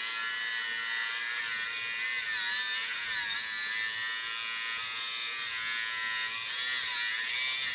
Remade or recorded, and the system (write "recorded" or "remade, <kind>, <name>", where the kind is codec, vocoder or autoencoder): recorded